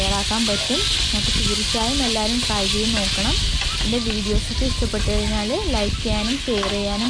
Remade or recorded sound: recorded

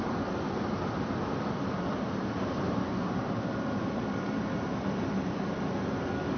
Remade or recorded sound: recorded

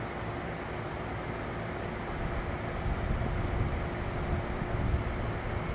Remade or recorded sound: recorded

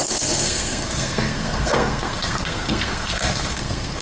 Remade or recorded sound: remade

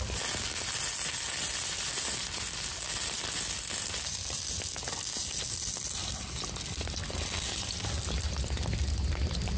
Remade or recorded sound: recorded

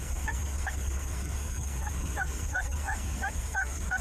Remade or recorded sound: remade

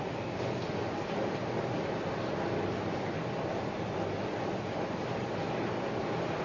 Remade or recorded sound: recorded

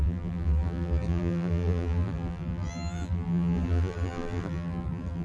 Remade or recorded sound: remade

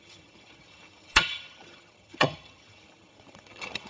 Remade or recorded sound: remade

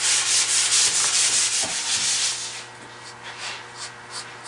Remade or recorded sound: recorded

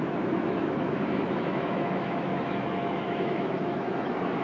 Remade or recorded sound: remade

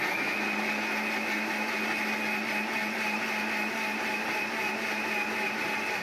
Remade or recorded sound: recorded